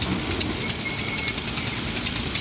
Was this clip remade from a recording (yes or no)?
no